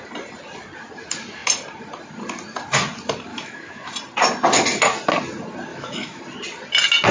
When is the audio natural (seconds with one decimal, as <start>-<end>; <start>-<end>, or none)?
0.0-3.3; 3.9-5.7; 6.2-7.1